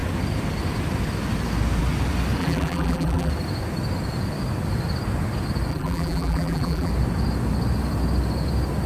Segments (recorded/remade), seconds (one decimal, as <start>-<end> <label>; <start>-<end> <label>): 0.0-2.4 recorded; 2.4-3.3 remade; 3.3-5.7 recorded; 5.7-6.9 remade; 6.9-8.9 recorded